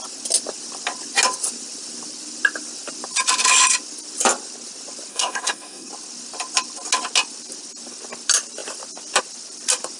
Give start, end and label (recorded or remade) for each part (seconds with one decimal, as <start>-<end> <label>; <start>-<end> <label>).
0.0-5.1 recorded; 5.1-5.9 remade; 5.9-10.0 recorded